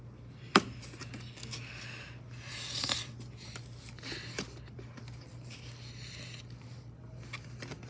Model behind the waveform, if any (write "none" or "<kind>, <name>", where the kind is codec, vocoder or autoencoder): none